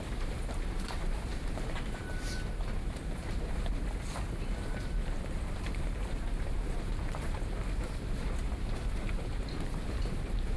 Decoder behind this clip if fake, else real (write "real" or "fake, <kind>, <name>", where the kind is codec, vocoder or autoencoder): fake, vocoder, BigVGAN v2